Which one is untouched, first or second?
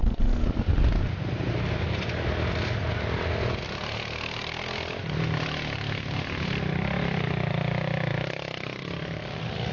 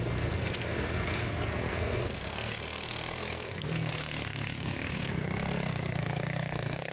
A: first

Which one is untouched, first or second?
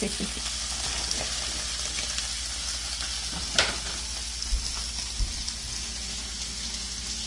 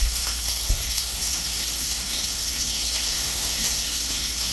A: first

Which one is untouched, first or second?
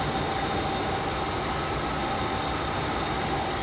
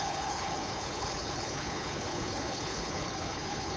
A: first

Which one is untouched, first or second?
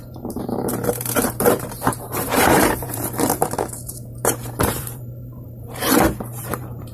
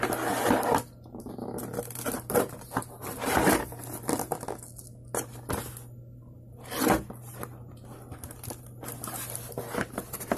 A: second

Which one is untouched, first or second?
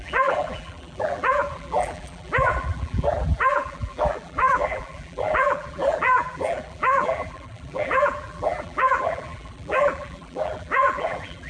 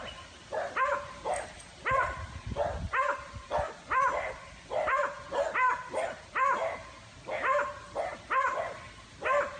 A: second